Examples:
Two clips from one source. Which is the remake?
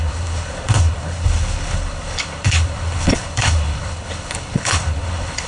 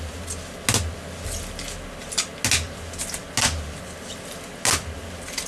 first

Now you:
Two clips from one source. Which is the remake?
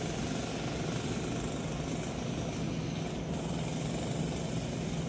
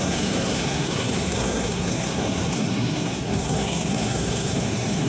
second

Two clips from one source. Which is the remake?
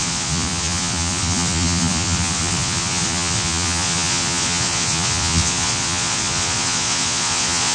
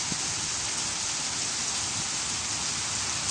first